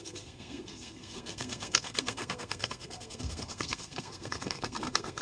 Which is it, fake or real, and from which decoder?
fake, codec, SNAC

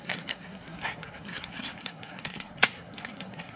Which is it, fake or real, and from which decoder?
fake, codec, SNAC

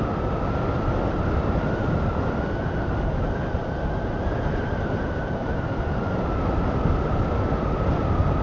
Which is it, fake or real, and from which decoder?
real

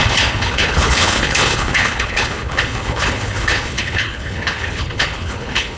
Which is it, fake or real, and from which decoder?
fake, codec, HILCodec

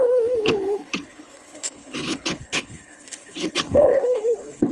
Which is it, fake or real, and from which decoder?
fake, codec, HILCodec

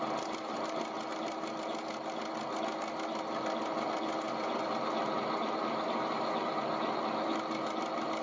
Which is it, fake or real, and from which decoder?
real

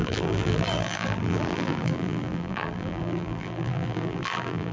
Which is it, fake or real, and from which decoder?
fake, vocoder, BigVGAN v2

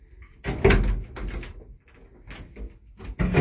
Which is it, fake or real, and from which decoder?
real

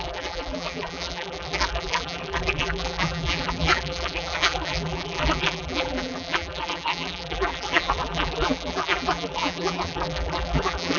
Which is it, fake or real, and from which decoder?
fake, vocoder, BigVGAN v2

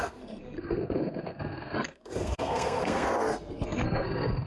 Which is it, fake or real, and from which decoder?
fake, codec, SNAC